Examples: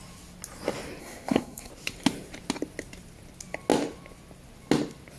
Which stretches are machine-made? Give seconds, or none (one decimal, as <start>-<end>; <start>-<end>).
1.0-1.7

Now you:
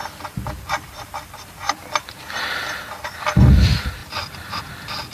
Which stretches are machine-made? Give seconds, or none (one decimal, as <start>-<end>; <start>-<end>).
4.0-4.6

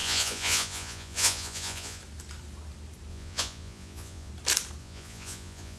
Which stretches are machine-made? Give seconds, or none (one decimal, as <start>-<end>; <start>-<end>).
0.0-2.0; 3.1-4.3; 4.8-5.8

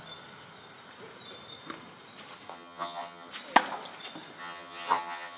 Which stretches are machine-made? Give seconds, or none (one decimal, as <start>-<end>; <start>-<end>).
2.5-3.3; 4.4-5.4

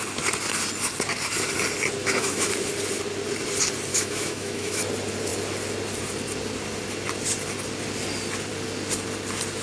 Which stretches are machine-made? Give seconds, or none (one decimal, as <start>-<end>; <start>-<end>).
2.0-2.5; 3.9-4.8

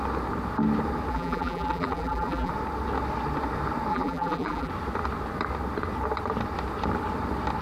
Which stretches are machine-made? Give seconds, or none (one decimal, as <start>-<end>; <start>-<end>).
1.1-2.5; 3.9-4.7